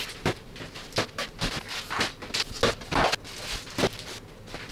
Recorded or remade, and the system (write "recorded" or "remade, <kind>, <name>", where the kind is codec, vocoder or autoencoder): recorded